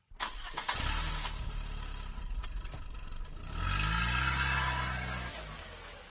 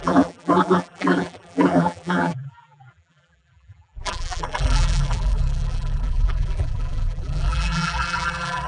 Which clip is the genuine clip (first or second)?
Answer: first